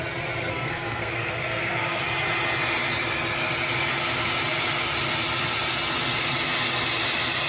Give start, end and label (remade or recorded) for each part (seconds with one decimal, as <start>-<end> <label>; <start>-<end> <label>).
0.0-0.5 recorded; 0.5-2.0 remade; 2.0-7.5 recorded